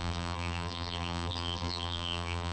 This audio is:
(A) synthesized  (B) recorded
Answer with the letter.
A